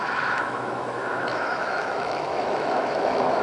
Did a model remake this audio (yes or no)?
yes